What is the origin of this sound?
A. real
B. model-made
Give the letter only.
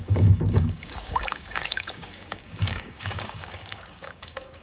B